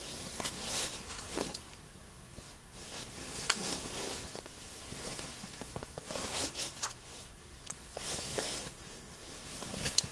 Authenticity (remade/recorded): remade